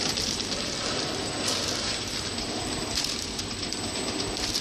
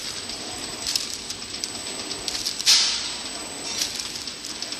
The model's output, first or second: first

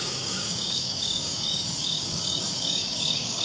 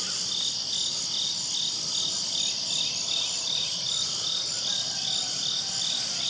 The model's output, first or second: first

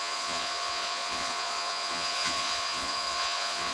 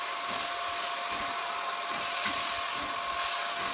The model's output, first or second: first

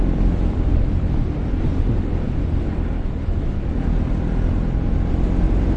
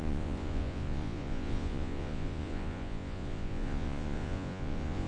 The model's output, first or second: second